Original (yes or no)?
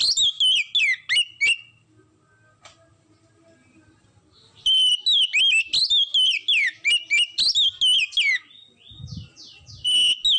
yes